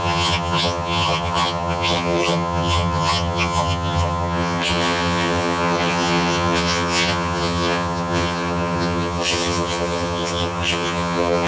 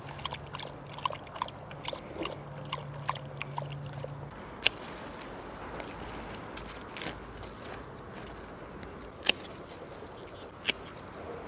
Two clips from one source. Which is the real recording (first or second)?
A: second